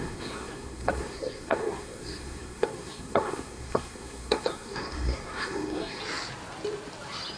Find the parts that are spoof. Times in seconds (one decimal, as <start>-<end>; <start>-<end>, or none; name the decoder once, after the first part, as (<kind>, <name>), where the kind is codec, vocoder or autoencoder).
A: 0.0-6.0 (codec, SNAC)